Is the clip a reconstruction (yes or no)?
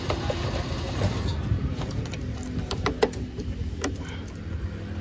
no